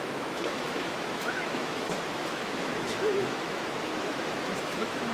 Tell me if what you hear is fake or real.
fake